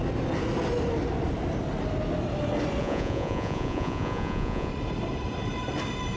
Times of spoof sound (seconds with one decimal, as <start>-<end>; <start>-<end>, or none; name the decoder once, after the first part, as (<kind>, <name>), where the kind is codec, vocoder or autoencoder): 2.8-4.7 (vocoder, Vocos)